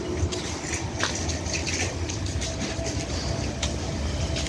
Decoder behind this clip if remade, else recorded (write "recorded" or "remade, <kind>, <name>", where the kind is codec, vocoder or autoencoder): recorded